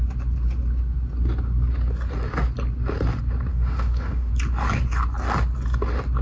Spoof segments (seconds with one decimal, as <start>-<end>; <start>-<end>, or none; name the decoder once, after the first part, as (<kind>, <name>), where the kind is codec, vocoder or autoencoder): 3.5-4.3 (autoencoder, DAC-VAE)